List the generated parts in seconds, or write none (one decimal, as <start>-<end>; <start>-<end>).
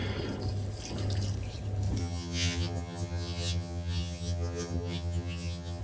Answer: 2.0-5.8